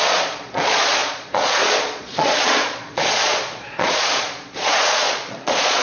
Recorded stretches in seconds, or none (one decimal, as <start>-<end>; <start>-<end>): none